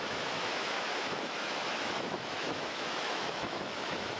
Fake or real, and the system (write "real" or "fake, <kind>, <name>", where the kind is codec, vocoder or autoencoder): fake, autoencoder, DAC-VAE